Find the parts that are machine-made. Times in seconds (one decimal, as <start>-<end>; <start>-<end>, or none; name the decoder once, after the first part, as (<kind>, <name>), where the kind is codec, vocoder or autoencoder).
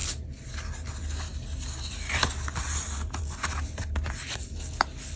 0.0-0.5 (vocoder, BigVGAN v2)